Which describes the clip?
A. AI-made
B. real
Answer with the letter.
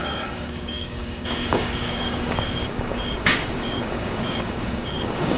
A